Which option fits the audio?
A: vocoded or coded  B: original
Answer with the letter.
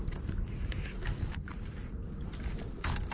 B